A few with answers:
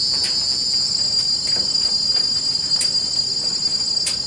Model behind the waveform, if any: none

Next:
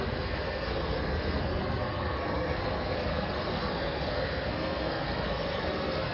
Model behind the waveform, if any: codec, SNAC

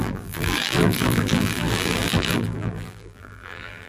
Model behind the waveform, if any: vocoder, BigVGAN v2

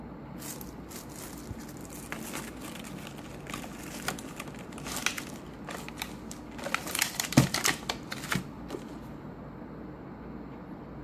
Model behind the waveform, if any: none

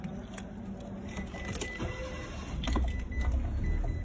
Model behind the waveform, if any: none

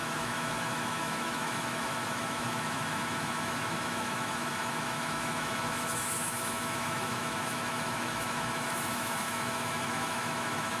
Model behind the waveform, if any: autoencoder, DAC-VAE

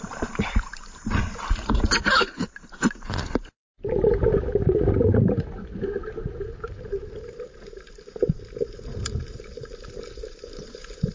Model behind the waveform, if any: vocoder, BigVGAN v2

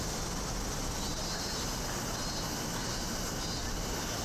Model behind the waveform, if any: none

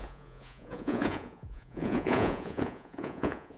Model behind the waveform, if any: vocoder, Vocos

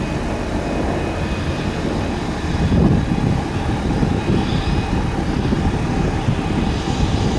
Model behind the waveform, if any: none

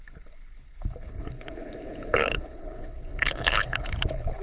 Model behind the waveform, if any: codec, HILCodec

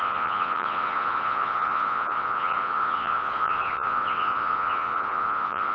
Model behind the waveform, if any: vocoder, Vocos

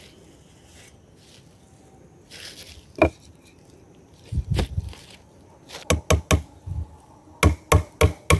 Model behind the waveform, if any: none